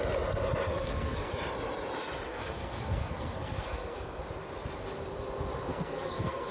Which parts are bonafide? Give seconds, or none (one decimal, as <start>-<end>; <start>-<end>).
0.0-0.7; 1.3-2.3; 4.2-5.7